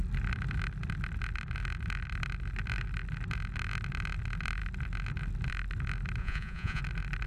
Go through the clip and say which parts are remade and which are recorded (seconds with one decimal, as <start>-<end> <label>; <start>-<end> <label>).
0.0-6.2 recorded; 6.2-6.8 remade; 6.8-7.3 recorded